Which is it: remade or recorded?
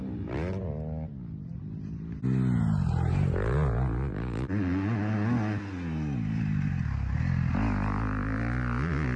recorded